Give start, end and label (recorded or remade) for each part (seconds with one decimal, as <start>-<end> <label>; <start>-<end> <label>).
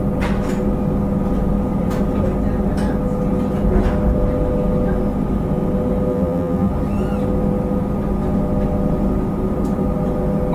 0.0-6.1 recorded; 6.1-6.7 remade; 6.7-10.5 recorded